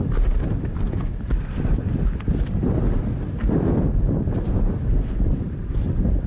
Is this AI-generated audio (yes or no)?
no